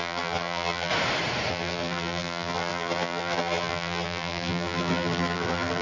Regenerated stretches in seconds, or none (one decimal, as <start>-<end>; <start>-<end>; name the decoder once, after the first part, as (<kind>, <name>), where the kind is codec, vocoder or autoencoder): 0.0-0.9 (vocoder, BigVGAN v2); 1.5-5.8